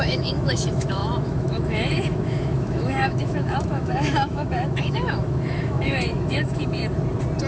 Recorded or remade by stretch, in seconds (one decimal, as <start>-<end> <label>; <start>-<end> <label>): 0.0-6.8 remade; 6.8-7.5 recorded